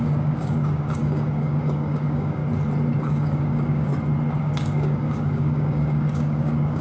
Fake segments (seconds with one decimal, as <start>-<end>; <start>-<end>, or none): 0.0-2.4; 3.0-3.9; 4.4-6.8